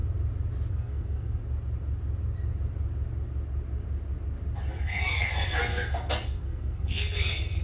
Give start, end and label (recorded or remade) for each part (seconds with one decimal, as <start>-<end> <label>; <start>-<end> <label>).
0.0-0.7 recorded; 0.7-1.4 remade; 1.4-4.7 recorded; 4.7-7.6 remade

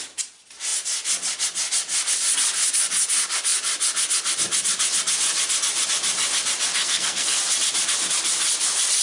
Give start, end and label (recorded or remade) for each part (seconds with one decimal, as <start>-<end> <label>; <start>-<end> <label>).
0.0-6.8 recorded; 6.8-7.4 remade; 7.4-9.0 recorded

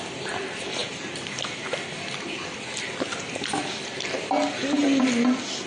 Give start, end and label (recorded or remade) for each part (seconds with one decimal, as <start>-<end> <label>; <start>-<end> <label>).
0.0-5.7 recorded

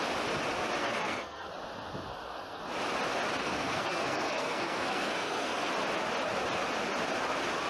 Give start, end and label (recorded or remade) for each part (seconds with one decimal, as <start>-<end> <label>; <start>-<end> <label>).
0.0-0.8 recorded; 0.8-1.5 remade; 1.5-2.1 recorded; 2.1-2.6 remade; 2.6-3.4 recorded; 3.4-5.7 remade; 5.7-7.7 recorded